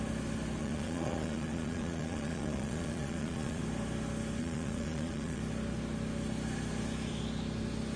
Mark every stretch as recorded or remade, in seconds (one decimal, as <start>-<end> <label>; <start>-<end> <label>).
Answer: 0.0-0.6 recorded; 0.6-3.6 remade; 3.6-4.4 recorded; 4.4-5.4 remade; 5.4-8.0 recorded